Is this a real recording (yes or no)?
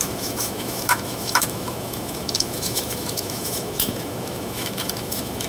no